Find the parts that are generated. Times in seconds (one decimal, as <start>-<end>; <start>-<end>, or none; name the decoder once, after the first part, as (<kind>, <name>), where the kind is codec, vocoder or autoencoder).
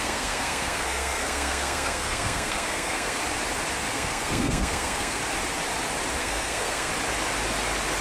0.0-3.2 (codec, SNAC); 3.9-5.2; 6.2-6.9